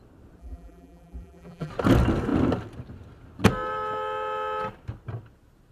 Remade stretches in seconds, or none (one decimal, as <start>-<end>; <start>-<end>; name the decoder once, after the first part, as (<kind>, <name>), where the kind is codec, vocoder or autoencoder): 0.4-1.7 (vocoder, BigVGAN v2)